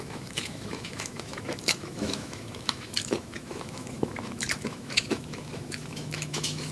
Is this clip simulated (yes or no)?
yes